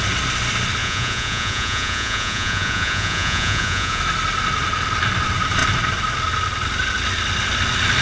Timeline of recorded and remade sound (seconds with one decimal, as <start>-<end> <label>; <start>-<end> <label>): 0.0-0.8 recorded; 0.8-4.0 remade; 4.0-8.0 recorded